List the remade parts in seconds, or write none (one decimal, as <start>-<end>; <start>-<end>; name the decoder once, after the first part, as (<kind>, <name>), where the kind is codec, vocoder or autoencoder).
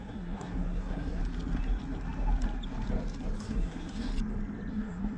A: 0.0-1.2 (codec, SNAC); 3.4-4.1; 4.7-5.2